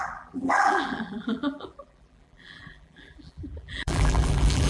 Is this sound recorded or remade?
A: remade